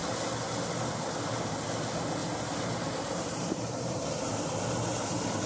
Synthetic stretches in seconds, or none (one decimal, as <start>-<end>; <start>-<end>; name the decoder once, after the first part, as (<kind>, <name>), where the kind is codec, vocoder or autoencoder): 2.2-4.5 (vocoder, BigVGAN v2)